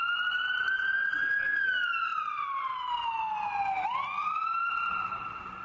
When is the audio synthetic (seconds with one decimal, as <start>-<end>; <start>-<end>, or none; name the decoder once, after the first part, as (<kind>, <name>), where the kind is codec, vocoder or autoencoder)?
none